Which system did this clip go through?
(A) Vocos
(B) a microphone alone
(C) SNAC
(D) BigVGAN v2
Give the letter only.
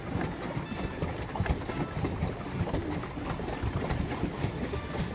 B